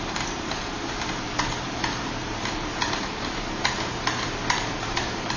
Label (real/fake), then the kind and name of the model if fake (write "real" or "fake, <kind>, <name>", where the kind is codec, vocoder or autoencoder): fake, vocoder, BigVGAN v2